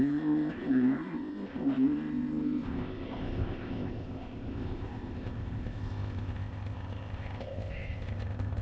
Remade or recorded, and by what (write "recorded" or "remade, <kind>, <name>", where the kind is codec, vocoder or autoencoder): remade, codec, ZipCodec